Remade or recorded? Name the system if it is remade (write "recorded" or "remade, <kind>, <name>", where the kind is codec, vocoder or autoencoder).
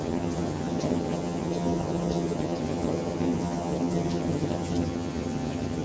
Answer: remade, vocoder, HiFi-GAN